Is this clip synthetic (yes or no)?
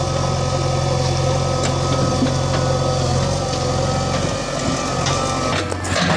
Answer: no